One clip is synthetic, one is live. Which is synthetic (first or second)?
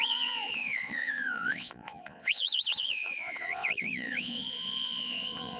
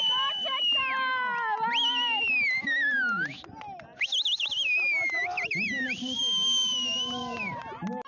first